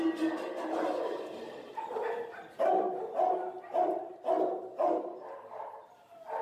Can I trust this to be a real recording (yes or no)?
yes